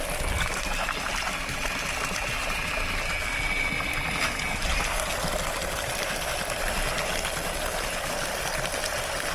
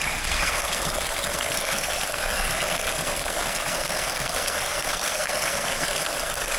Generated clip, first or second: second